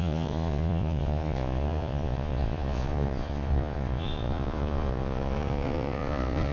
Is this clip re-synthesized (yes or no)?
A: yes